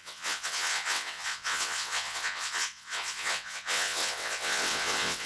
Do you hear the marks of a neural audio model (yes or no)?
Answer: yes